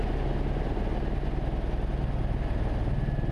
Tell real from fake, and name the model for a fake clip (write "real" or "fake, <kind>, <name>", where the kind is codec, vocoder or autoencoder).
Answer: real